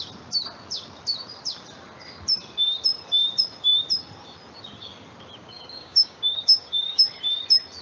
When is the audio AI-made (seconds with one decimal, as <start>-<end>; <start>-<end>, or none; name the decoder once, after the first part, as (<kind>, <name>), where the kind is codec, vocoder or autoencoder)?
5.4-7.1 (codec, DAC)